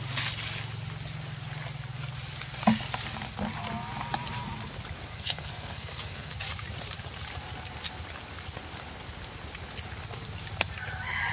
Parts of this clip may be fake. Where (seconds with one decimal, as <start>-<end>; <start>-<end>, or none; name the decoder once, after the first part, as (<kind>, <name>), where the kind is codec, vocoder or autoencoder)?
5.1-6.3 (codec, SNAC)